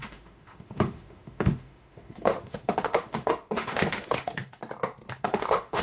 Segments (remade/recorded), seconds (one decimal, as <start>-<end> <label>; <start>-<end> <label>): 0.0-4.6 remade; 4.6-5.2 recorded; 5.2-5.8 remade